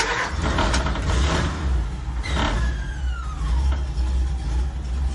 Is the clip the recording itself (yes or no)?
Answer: yes